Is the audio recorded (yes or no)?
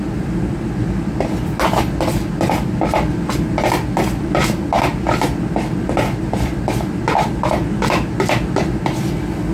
yes